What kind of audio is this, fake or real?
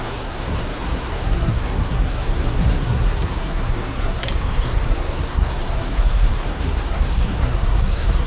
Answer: fake